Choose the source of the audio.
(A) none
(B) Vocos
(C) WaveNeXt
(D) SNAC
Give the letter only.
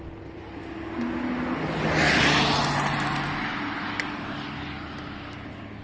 A